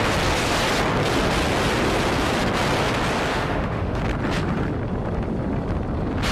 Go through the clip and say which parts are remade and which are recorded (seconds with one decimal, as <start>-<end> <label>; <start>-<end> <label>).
0.0-3.3 recorded; 3.3-4.0 remade; 4.0-6.3 recorded